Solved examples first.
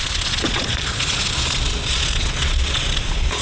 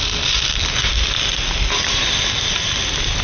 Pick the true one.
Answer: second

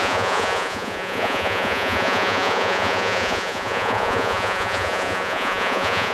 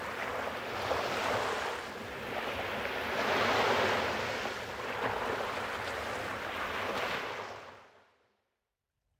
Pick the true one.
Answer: second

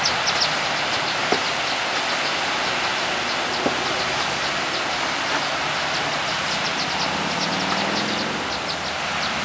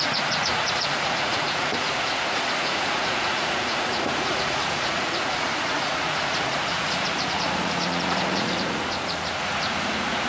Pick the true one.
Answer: first